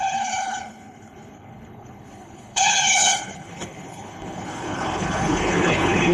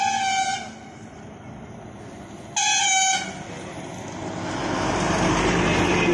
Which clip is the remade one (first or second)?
first